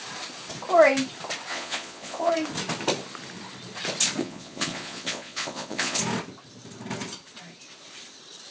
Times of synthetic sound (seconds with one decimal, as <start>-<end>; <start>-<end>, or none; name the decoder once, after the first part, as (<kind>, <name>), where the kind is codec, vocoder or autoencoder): 1.5-2.3 (vocoder, Vocos); 4.2-6.0